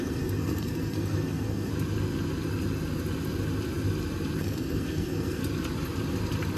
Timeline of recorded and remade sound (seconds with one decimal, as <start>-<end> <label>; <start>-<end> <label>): 0.0-1.7 remade; 1.7-4.4 recorded; 4.4-5.4 remade; 5.4-6.6 recorded